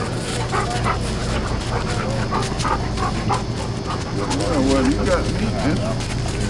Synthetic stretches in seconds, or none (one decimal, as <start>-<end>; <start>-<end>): none